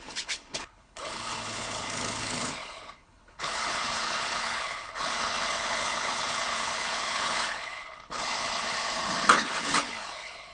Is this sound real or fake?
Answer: fake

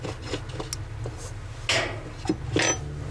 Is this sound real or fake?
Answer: real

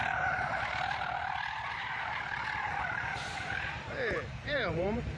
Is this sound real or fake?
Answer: fake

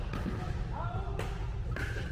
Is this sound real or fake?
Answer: real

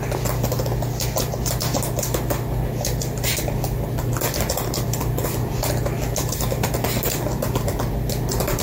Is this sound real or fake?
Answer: real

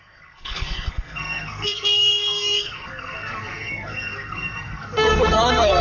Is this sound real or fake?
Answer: fake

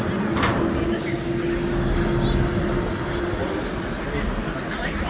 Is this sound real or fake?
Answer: real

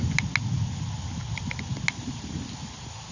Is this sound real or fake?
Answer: real